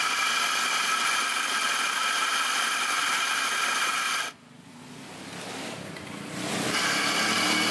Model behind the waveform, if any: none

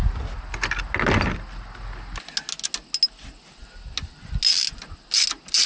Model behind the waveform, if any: none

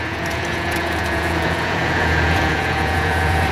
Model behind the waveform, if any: vocoder, Vocos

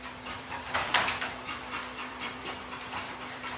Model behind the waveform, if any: vocoder, BigVGAN v2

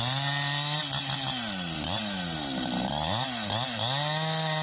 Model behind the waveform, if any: none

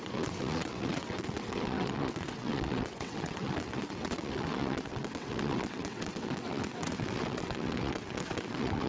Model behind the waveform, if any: vocoder, WaveNeXt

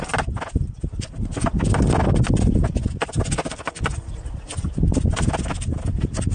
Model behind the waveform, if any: none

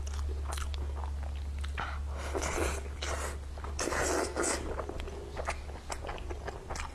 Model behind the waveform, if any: none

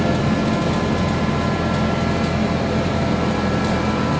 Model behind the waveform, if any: none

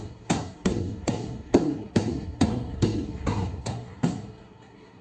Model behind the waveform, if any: codec, SNAC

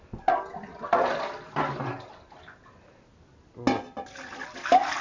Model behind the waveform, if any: none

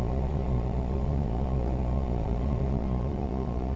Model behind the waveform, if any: vocoder, Vocos